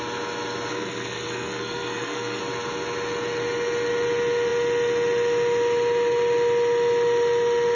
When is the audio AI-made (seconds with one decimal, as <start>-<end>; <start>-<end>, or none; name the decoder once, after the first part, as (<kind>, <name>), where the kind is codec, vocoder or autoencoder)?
0.7-2.4 (codec, SNAC)